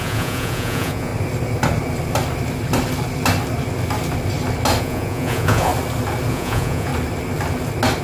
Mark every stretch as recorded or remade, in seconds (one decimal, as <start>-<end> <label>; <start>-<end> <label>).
0.0-1.1 remade; 1.1-4.8 recorded; 4.8-5.7 remade; 5.7-6.3 recorded; 6.3-6.9 remade; 6.9-8.0 recorded